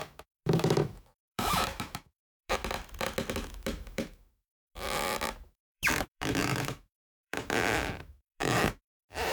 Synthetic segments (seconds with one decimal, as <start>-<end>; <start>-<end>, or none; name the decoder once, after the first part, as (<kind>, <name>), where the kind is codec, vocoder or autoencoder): 0.0-2.6 (autoencoder, DAC-VAE); 3.3-9.3

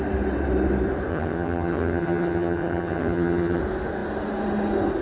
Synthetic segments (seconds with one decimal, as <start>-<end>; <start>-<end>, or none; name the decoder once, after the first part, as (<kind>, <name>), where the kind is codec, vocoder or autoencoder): 1.1-3.6 (vocoder, HiFi-GAN)